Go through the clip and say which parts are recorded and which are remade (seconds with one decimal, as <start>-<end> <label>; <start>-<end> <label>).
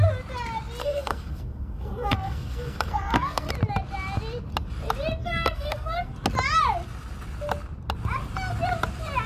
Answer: 0.0-0.8 recorded; 0.8-3.5 remade; 3.5-5.2 recorded; 5.2-6.1 remade; 6.1-9.3 recorded